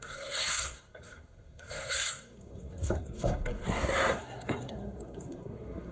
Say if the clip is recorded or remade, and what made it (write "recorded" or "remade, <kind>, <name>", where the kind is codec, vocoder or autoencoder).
remade, codec, SNAC